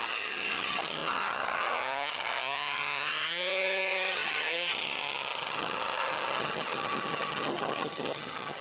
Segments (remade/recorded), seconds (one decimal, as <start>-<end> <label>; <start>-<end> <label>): 0.0-8.6 remade